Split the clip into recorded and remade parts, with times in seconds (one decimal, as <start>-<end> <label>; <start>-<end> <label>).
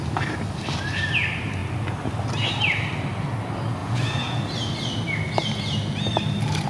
0.0-3.8 recorded; 3.8-4.4 remade; 4.4-6.7 recorded